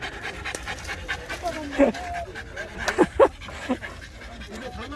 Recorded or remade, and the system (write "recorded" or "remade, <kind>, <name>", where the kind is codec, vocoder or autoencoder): recorded